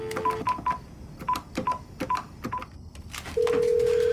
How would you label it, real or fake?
real